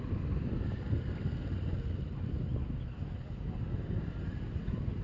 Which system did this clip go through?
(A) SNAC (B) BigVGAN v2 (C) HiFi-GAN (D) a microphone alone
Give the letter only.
D